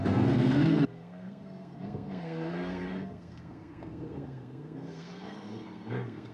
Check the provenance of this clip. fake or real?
fake